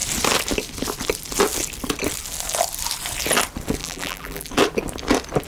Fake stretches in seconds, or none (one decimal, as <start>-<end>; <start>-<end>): 3.8-4.5

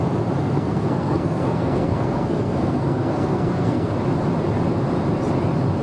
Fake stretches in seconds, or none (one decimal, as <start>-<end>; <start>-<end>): 0.4-3.9

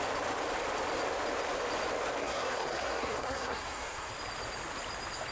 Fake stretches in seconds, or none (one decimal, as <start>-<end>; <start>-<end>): 2.2-4.1

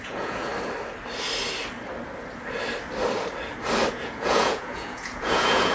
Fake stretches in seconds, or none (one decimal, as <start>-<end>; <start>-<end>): 0.0-0.5; 3.9-5.7

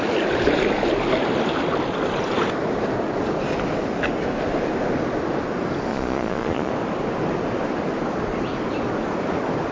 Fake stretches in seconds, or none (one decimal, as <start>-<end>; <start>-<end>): 5.9-6.7

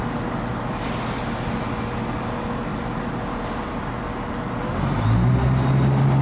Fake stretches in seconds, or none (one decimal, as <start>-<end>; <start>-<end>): none